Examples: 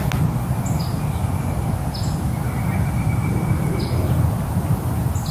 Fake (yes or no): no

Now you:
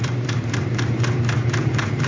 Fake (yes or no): yes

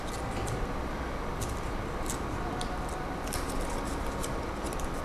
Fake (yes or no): yes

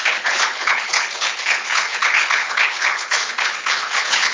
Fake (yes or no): yes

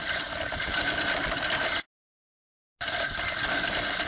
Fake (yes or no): no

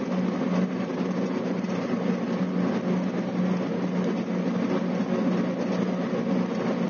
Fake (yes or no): no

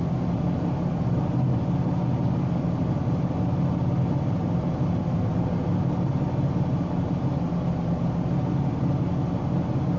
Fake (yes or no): no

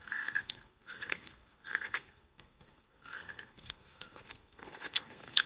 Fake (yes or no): yes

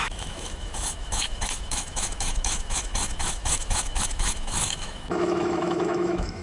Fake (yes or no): yes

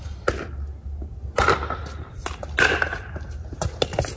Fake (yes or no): no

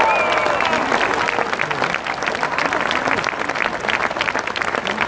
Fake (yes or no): no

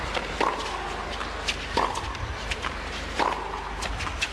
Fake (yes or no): no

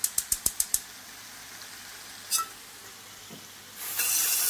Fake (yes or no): no